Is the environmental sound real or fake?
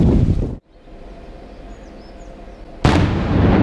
real